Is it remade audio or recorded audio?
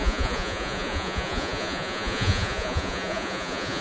remade